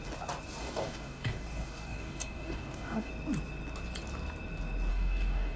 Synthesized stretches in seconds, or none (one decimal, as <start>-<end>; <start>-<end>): 0.6-3.1; 4.9-5.6